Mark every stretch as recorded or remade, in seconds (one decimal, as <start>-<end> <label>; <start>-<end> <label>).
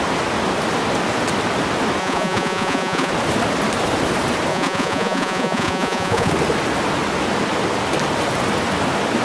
0.0-2.0 recorded; 2.0-3.1 remade; 3.1-4.5 recorded; 4.5-6.3 remade; 6.3-9.2 recorded